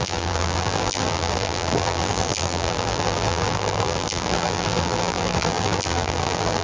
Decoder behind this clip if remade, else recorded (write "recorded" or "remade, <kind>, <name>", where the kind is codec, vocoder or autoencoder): remade, vocoder, BigVGAN v2